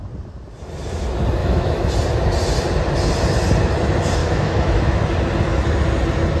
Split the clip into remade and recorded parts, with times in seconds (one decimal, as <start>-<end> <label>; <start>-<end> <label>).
0.0-1.4 recorded; 1.4-1.9 remade; 1.9-4.2 recorded; 4.2-5.0 remade; 5.0-6.4 recorded

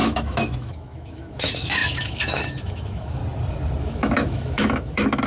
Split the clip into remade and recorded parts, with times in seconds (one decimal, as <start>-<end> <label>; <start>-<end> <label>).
0.0-3.2 remade; 3.2-3.8 recorded; 3.8-5.3 remade